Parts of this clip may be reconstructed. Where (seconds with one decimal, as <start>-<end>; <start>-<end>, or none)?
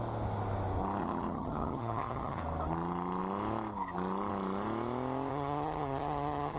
1.0-2.4; 5.3-6.6